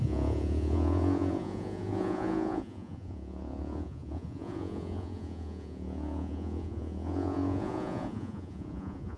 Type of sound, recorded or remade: remade